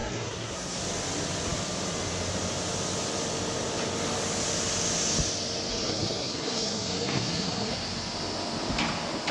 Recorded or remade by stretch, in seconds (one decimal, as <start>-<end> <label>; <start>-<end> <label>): 0.0-0.8 remade; 0.8-5.7 recorded; 5.7-7.7 remade; 7.7-9.3 recorded